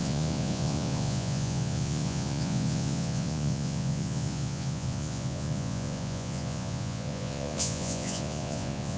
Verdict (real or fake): fake